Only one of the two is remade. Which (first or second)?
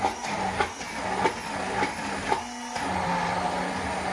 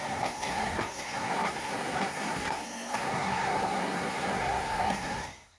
second